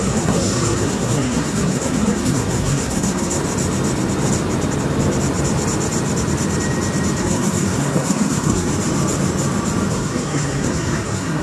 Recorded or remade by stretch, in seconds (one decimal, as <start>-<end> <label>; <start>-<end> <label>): 0.0-3.4 remade; 3.4-7.2 recorded; 7.2-8.7 remade; 8.7-9.9 recorded; 9.9-11.4 remade

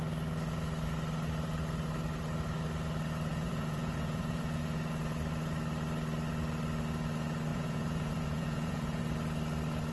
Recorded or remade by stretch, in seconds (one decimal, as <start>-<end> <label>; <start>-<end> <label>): 0.0-3.3 recorded; 3.3-4.6 remade; 4.6-7.5 recorded; 7.5-9.0 remade; 9.0-9.9 recorded

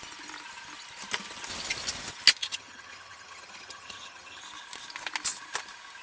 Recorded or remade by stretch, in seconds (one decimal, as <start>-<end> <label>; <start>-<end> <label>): 0.0-2.4 recorded; 2.4-4.4 remade; 4.4-6.0 recorded

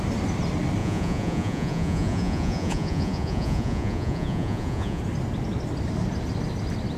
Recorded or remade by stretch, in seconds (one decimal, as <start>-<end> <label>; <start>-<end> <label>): 0.0-0.8 recorded; 0.8-5.0 remade; 5.0-7.0 recorded